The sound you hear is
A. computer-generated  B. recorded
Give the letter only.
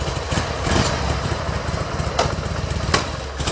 B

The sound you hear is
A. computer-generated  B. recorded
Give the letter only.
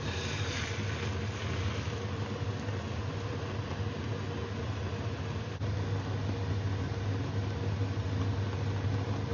B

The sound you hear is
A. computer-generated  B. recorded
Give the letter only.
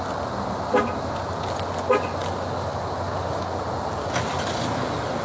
B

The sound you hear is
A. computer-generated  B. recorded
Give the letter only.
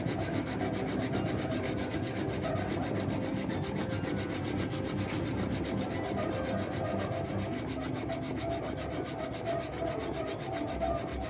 B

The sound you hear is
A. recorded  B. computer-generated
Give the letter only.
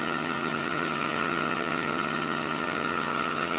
B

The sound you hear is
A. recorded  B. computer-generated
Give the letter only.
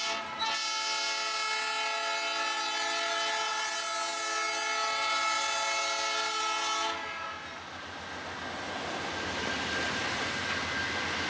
A